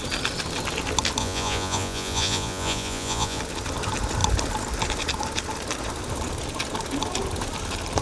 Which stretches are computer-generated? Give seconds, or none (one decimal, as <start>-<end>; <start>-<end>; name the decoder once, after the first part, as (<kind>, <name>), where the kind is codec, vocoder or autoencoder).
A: 1.2-3.4 (vocoder, Vocos)